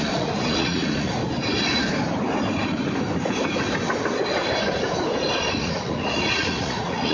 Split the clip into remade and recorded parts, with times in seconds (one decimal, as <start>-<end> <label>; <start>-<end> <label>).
0.0-1.2 remade; 1.2-5.5 recorded; 5.5-7.1 remade

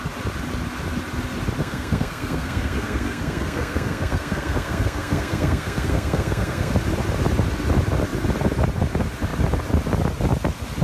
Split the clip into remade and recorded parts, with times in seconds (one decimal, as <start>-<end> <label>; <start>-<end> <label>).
0.0-1.6 recorded; 1.6-6.7 remade; 6.7-10.8 recorded